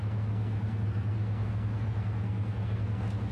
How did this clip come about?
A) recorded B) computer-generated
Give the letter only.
B